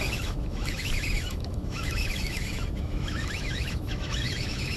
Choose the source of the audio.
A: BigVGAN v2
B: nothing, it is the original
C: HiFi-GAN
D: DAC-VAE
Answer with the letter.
D